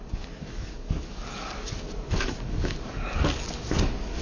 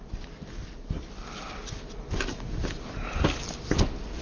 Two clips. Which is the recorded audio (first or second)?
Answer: second